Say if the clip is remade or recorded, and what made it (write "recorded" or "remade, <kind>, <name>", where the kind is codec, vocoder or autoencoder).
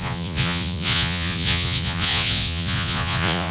remade, vocoder, Vocos